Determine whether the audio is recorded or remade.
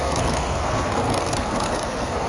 remade